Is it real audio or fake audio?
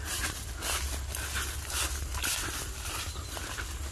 real